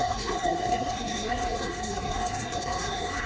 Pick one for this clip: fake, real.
fake